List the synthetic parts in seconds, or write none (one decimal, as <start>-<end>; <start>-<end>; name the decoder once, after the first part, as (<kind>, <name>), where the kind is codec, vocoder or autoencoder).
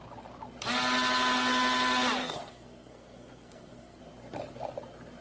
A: 2.2-4.0 (codec, SNAC)